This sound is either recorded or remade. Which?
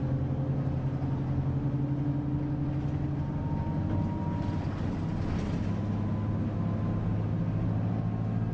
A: recorded